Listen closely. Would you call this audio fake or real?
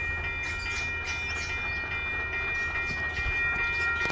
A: real